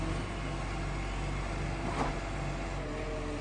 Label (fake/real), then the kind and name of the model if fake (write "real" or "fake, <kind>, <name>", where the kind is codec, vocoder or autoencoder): real